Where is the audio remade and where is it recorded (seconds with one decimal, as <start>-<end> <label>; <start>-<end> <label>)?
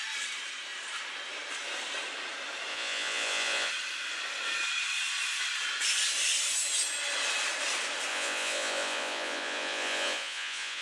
0.0-2.7 recorded; 2.7-3.7 remade; 3.7-8.1 recorded; 8.1-10.8 remade